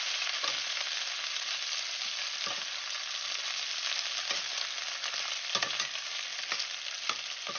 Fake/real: real